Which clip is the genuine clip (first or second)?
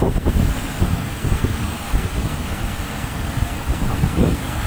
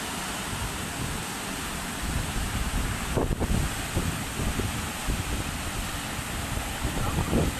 second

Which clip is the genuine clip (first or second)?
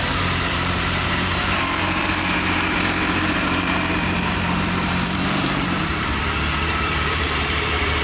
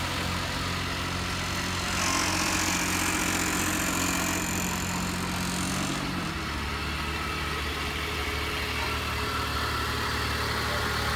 second